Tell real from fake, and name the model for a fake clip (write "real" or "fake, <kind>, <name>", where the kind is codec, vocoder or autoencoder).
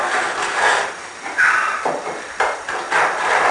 real